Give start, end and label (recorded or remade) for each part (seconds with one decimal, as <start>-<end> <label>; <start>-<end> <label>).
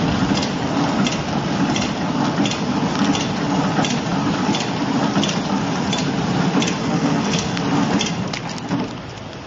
0.0-6.8 recorded; 6.8-7.6 remade; 7.6-9.5 recorded